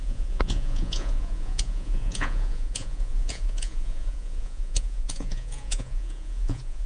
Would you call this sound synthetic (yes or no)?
yes